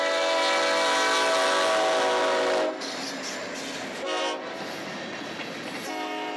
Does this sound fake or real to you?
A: real